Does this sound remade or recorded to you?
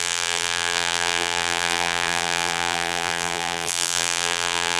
remade